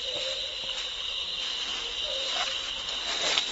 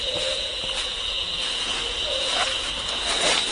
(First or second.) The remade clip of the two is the second